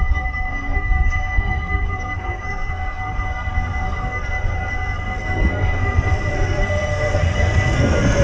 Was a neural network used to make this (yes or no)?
yes